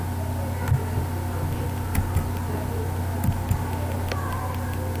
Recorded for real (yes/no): yes